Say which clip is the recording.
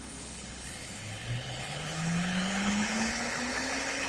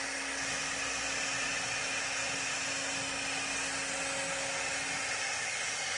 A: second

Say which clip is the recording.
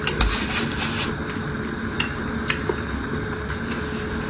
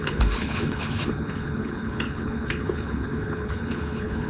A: first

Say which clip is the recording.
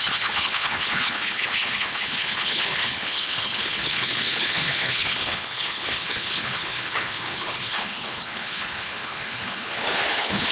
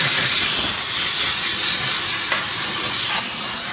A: second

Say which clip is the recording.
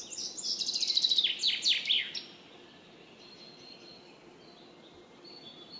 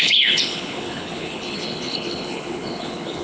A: first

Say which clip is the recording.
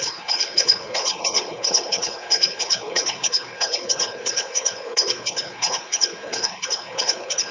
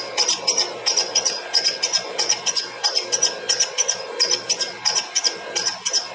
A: second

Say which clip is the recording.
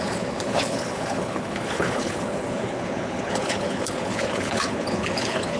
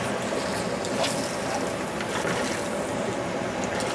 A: second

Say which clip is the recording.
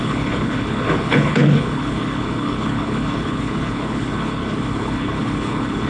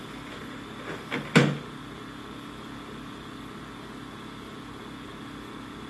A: second